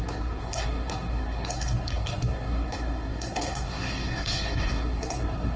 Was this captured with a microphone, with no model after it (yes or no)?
no